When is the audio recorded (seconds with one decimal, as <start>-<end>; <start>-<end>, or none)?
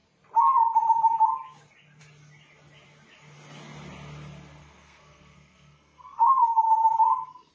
0.0-4.6